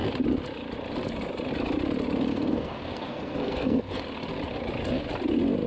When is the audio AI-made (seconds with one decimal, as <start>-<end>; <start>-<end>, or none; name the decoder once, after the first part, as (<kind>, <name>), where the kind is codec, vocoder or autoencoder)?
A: 2.3-4.0 (codec, SNAC)